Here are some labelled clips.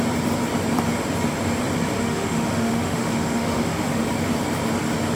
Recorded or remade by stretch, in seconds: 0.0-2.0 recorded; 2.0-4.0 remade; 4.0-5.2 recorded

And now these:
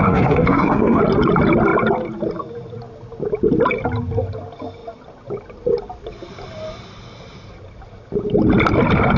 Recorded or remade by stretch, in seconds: 0.0-1.0 remade; 1.0-9.2 recorded

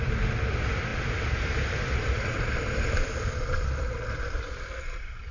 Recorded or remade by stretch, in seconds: 0.0-0.9 recorded; 0.9-4.0 remade; 4.0-5.3 recorded

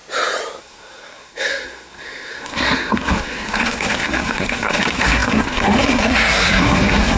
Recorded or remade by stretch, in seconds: 0.0-0.6 recorded; 0.6-7.2 remade

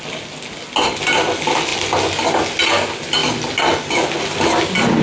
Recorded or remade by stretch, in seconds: 0.0-5.0 recorded